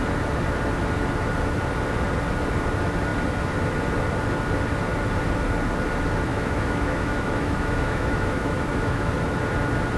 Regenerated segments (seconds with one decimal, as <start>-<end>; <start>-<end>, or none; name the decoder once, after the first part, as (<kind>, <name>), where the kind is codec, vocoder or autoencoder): 6.3-9.1 (autoencoder, DAC-VAE)